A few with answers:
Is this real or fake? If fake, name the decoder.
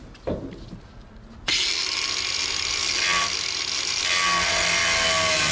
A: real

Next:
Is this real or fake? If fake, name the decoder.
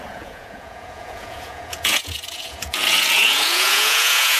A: fake, vocoder, Vocos